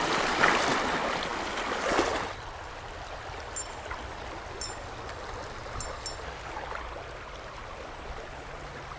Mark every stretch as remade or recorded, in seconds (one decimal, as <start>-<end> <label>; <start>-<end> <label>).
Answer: 0.0-9.0 recorded